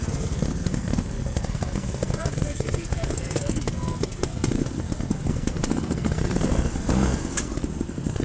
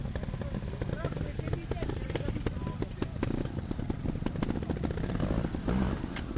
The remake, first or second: first